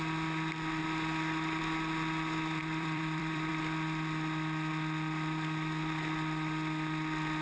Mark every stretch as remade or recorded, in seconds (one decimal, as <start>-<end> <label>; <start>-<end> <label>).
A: 0.0-2.6 recorded; 2.6-3.5 remade; 3.5-7.4 recorded